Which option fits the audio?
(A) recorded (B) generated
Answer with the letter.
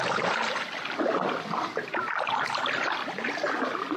A